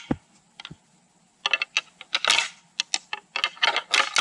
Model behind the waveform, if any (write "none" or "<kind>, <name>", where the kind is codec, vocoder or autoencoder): none